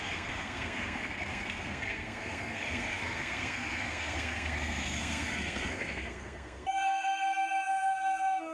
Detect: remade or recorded remade